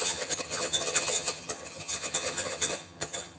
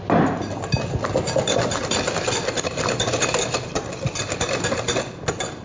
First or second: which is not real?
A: first